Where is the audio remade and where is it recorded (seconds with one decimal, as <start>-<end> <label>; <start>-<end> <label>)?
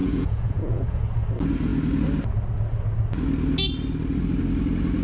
0.0-1.0 remade; 1.0-5.0 recorded